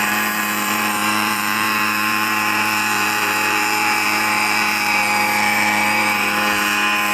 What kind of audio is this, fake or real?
fake